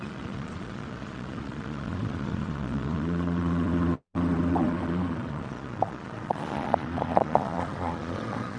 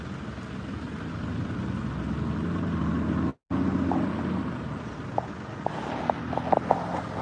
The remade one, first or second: first